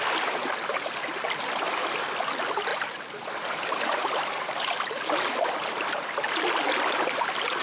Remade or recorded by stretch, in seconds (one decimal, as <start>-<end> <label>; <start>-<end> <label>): 0.0-7.6 recorded